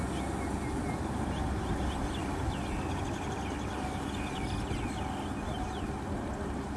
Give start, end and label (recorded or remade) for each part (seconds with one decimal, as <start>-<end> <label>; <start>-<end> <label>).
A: 0.0-6.8 recorded